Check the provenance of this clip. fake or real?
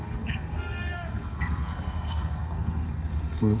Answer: fake